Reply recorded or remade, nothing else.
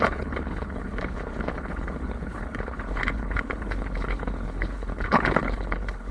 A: remade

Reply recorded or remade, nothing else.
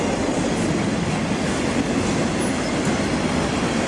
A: recorded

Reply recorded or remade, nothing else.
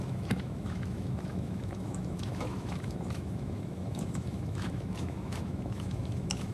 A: remade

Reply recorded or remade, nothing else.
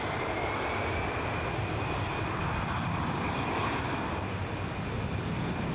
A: recorded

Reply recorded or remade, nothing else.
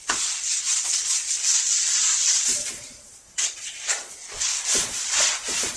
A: remade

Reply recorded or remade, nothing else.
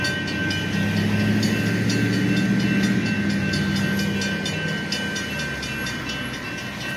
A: recorded